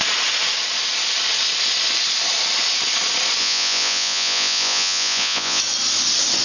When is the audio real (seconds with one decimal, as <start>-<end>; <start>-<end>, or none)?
0.0-3.4; 5.6-6.4